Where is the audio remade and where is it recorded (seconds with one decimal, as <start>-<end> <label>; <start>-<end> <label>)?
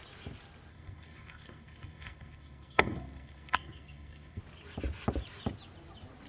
0.0-0.7 recorded; 0.7-4.4 remade; 4.4-6.3 recorded